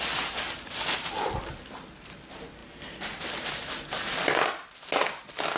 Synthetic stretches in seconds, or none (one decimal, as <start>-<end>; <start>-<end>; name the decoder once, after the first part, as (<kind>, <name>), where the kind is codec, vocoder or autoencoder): none